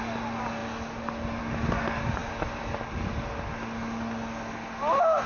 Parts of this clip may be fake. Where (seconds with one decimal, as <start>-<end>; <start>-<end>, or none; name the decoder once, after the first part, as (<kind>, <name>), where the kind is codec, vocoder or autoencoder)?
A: none